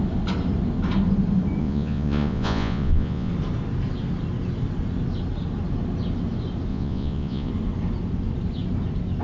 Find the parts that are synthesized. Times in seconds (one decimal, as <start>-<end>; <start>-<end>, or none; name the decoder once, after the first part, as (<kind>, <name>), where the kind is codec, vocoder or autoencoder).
1.6-3.3 (vocoder, Vocos); 6.7-7.5